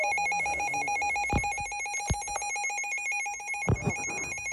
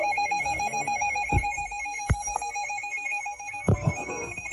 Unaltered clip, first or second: first